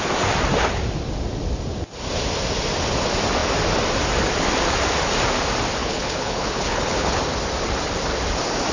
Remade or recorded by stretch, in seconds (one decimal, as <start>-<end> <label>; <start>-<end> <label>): 0.0-5.8 recorded; 5.8-7.2 remade; 7.2-8.7 recorded

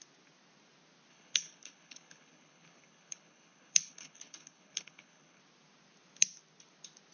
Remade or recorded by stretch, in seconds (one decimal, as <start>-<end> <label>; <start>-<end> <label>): 0.0-1.1 recorded; 1.1-5.4 remade; 5.4-7.1 recorded

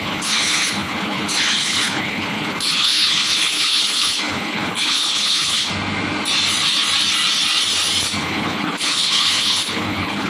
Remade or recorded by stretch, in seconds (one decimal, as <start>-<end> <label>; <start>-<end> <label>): 0.0-5.7 remade; 5.7-8.2 recorded; 8.2-10.3 remade

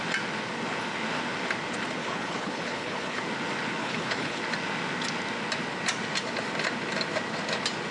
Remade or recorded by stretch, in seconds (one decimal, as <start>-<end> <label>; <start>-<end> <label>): 0.0-2.0 recorded; 2.0-3.2 remade; 3.2-3.8 recorded; 3.8-4.4 remade; 4.4-7.9 recorded

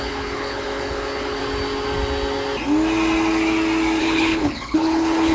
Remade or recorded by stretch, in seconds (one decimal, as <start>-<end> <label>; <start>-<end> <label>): 0.0-1.4 remade; 1.4-4.0 recorded; 4.0-5.3 remade

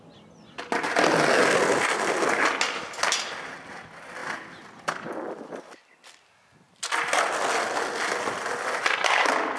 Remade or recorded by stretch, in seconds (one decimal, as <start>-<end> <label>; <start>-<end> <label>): 0.0-9.6 recorded

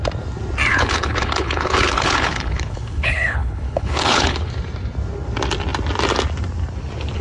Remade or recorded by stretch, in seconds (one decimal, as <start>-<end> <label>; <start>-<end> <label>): 0.0-0.7 recorded; 0.7-4.5 remade; 4.5-7.2 recorded